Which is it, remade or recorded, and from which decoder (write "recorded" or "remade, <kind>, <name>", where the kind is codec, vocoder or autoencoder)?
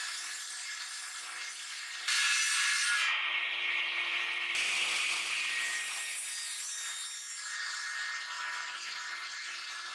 recorded